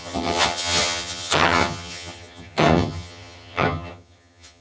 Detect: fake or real fake